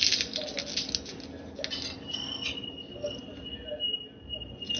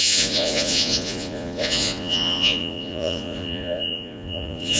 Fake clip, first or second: second